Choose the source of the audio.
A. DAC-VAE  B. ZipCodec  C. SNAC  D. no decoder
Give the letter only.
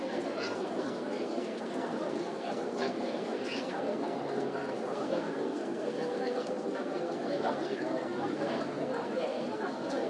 C